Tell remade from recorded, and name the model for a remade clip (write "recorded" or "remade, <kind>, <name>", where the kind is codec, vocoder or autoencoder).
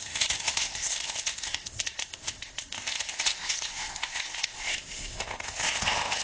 remade, codec, ZipCodec